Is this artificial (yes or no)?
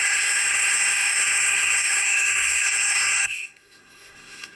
yes